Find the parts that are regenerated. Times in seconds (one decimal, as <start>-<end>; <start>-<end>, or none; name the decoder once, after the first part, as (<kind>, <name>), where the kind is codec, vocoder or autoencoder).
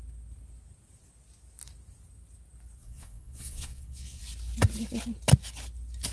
2.8-4.2 (vocoder, Vocos)